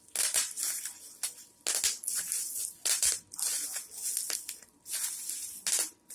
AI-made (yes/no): no